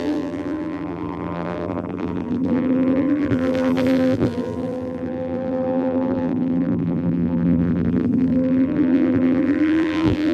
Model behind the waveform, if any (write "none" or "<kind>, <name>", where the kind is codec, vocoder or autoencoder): vocoder, BigVGAN v2